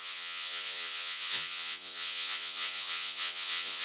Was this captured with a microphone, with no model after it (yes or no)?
no